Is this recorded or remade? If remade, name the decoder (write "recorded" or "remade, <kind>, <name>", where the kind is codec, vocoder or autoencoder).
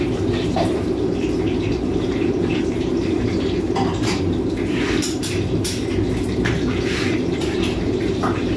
remade, vocoder, BigVGAN v2